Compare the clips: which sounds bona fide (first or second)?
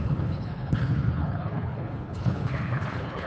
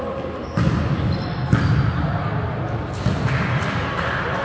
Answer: second